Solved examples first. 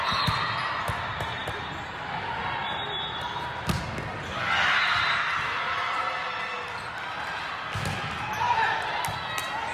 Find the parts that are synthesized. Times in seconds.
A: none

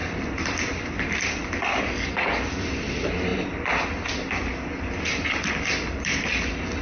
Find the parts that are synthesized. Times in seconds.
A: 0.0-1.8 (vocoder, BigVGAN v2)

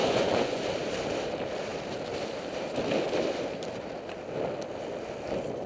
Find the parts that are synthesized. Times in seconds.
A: 0.0-0.6 (vocoder, Vocos)

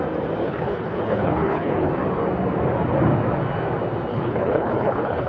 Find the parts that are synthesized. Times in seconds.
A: 0.4-1.9 (codec, HILCodec); 4.1-5.3

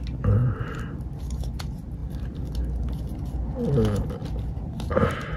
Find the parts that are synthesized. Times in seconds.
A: 0.4-1.6 (vocoder, BigVGAN v2)

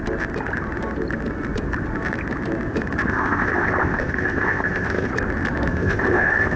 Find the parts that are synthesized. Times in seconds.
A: 3.1-5.1 (codec, ZipCodec); 5.7-6.6

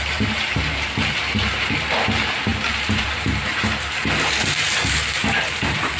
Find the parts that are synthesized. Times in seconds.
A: 0.0-6.0 (vocoder, BigVGAN v2)